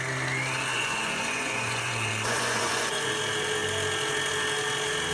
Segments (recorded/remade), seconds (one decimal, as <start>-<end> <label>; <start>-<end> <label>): 0.0-0.7 recorded; 0.7-3.1 remade; 3.1-5.1 recorded